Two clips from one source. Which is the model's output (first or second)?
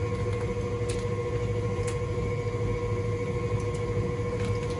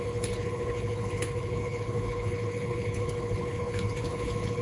second